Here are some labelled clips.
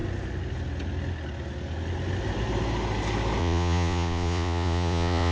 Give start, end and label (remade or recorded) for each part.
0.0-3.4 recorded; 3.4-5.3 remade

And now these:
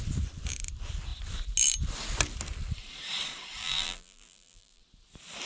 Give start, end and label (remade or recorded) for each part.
0.0-3.6 recorded; 3.6-4.8 remade; 4.8-5.5 recorded

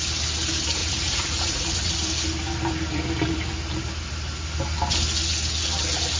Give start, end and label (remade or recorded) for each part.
0.0-0.8 recorded; 0.8-1.9 remade; 1.9-6.2 recorded